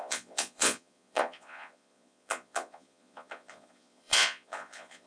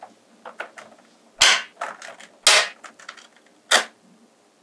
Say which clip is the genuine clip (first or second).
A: second